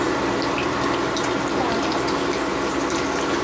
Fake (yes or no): no